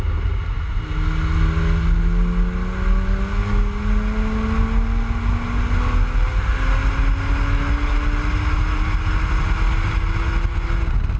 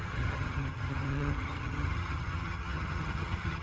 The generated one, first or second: second